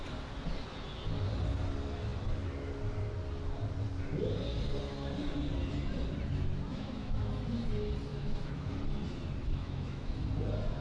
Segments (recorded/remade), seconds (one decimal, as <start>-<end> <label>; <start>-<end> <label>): 0.0-6.7 recorded; 6.7-7.3 remade; 7.3-8.1 recorded; 8.1-8.7 remade; 8.7-9.4 recorded; 9.4-10.3 remade; 10.3-10.8 recorded

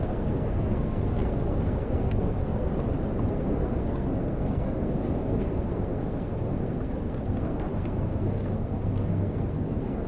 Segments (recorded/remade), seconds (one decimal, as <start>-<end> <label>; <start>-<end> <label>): 0.0-2.7 remade; 2.7-3.3 recorded; 3.3-10.1 remade

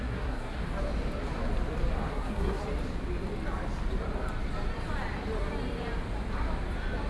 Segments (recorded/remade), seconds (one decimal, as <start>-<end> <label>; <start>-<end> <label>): 0.0-0.6 remade; 0.6-2.1 recorded; 2.1-2.6 remade; 2.6-7.1 recorded

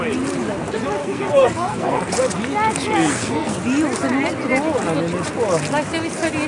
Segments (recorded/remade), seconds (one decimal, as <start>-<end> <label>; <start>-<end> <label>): 0.0-1.0 recorded; 1.0-2.1 remade; 2.1-3.1 recorded; 3.1-3.6 remade; 3.6-6.5 recorded